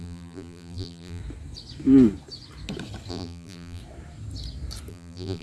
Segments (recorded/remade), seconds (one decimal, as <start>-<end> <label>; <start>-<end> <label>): 0.0-1.2 remade; 1.2-3.1 recorded; 3.1-3.8 remade; 3.8-4.9 recorded; 4.9-5.4 remade